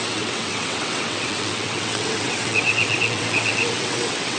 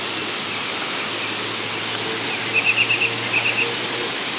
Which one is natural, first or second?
second